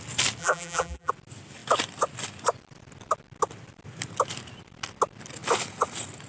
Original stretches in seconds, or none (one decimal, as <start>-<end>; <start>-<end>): 0.0-0.4; 1.1-6.3